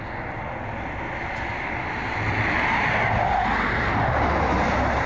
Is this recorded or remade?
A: recorded